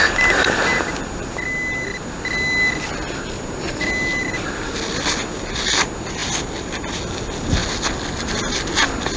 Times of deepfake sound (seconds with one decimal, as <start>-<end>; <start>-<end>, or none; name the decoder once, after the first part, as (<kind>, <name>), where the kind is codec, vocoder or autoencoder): none